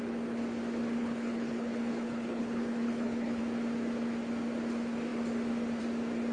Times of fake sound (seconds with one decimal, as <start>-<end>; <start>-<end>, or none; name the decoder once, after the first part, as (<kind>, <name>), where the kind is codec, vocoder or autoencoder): 1.0-3.4 (codec, HILCodec)